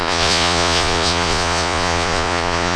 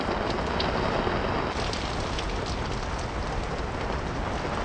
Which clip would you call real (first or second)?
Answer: second